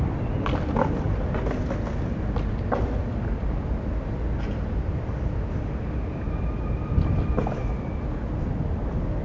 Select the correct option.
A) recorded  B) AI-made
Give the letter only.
A